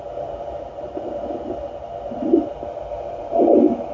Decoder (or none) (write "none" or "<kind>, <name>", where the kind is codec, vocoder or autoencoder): none